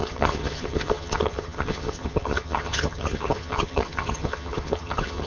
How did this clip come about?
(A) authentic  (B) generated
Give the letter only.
B